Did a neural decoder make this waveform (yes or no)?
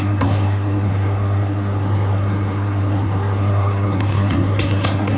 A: yes